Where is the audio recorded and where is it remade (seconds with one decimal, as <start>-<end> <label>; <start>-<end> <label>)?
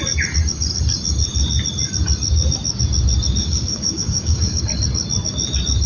0.0-3.4 recorded; 3.4-4.6 remade; 4.6-5.9 recorded